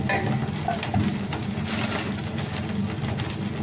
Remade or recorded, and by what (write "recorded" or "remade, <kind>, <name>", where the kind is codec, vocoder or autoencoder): recorded